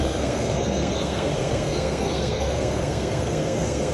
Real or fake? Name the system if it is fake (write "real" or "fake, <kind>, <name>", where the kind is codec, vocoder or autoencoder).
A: fake, codec, SNAC